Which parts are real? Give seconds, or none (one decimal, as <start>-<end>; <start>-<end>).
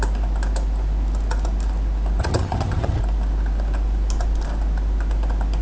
0.0-2.2; 3.0-5.6